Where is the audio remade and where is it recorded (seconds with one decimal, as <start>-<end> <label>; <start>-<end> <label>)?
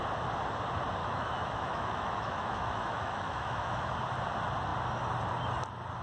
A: 0.0-1.0 recorded; 1.0-3.9 remade; 3.9-6.0 recorded